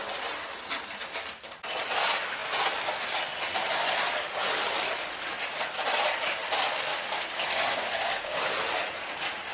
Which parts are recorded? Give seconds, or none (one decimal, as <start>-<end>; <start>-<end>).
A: 0.0-6.9; 8.5-9.5